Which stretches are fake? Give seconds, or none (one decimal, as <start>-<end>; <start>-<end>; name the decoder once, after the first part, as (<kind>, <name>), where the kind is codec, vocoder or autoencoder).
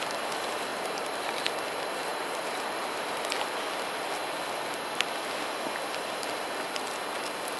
0.7-1.3 (vocoder, BigVGAN v2); 2.1-3.2